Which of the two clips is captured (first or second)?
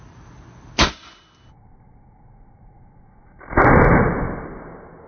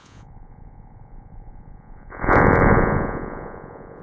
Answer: first